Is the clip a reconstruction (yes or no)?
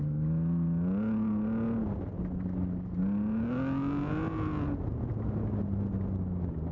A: no